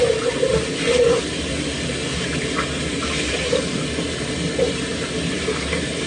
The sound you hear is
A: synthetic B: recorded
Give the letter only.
B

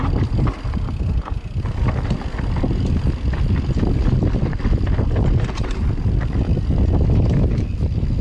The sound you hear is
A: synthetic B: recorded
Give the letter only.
B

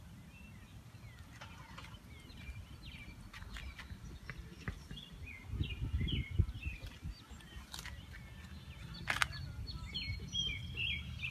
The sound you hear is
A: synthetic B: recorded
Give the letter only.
B